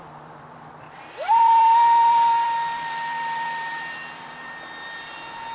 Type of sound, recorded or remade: remade